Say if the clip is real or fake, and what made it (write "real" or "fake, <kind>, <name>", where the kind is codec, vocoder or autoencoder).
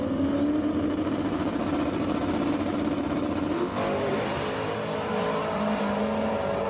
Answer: real